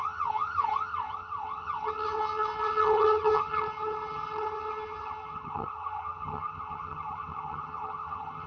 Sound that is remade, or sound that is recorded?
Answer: remade